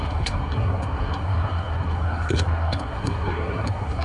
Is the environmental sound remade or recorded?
remade